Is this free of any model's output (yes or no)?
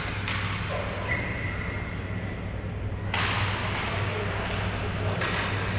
yes